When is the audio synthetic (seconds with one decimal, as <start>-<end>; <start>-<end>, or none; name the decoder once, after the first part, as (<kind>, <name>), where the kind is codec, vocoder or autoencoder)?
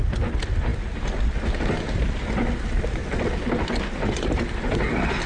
0.7-1.3 (vocoder, BigVGAN v2); 3.0-3.8